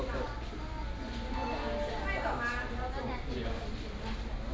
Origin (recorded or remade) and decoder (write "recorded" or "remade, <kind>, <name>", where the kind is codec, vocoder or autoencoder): recorded